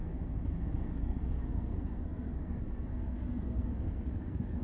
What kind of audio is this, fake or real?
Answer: fake